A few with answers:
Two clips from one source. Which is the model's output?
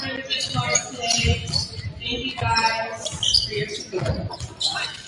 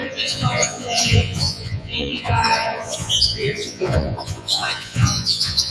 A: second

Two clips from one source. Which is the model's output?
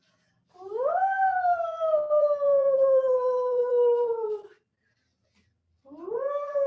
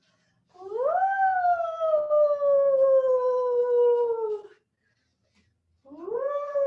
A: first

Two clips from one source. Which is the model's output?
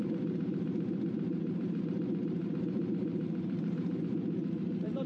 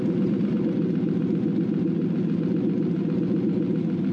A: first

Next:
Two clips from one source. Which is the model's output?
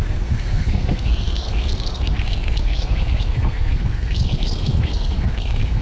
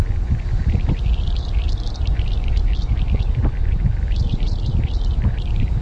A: first